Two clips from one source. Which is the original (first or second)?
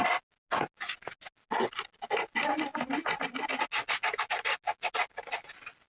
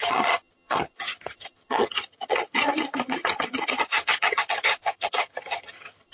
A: first